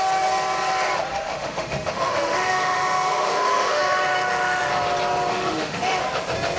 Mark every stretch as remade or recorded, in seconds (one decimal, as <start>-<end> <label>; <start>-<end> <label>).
0.0-1.1 recorded; 1.1-4.7 remade; 4.7-5.3 recorded; 5.3-6.0 remade; 6.0-6.6 recorded

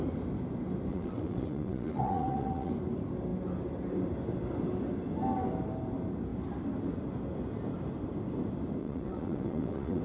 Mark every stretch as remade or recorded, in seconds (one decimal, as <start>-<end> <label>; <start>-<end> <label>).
0.0-0.9 recorded; 0.9-2.7 remade; 2.7-8.8 recorded; 8.8-10.0 remade

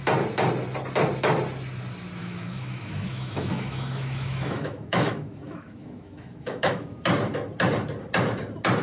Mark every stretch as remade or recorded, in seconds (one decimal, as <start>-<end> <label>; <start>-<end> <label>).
0.0-2.2 recorded; 2.2-7.0 remade; 7.0-8.8 recorded

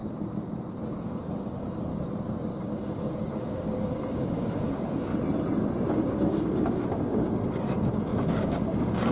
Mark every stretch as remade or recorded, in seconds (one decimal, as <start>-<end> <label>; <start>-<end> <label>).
0.0-1.0 recorded; 1.0-1.9 remade; 1.9-2.6 recorded; 2.6-5.1 remade; 5.1-5.9 recorded; 5.9-9.1 remade

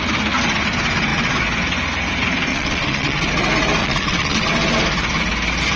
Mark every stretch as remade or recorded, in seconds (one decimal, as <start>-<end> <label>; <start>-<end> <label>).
0.0-2.5 recorded; 2.5-3.3 remade; 3.3-3.8 recorded; 3.8-4.5 remade; 4.5-5.8 recorded

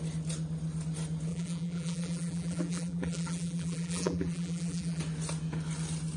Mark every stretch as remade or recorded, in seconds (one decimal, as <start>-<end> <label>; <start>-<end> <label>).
0.0-1.3 recorded; 1.3-5.0 remade; 5.0-6.2 recorded

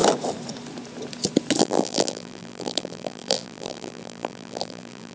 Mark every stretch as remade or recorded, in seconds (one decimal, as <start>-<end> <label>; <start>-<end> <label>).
0.0-1.6 recorded; 1.6-5.1 remade